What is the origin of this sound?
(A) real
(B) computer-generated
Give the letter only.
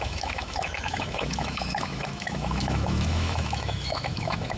B